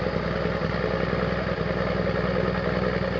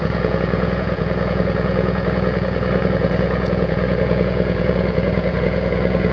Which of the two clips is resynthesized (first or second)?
second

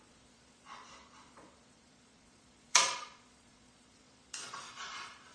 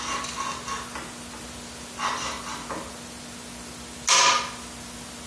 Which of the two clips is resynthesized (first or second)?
first